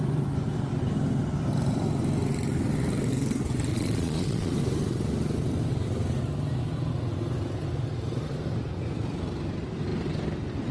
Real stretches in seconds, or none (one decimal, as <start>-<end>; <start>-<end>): 0.0-3.7; 4.5-10.7